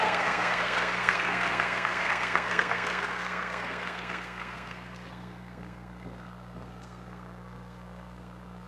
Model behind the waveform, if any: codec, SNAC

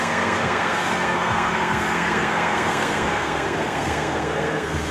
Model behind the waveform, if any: codec, SNAC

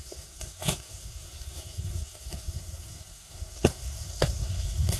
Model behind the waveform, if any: codec, SNAC